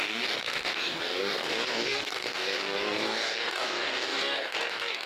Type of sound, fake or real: fake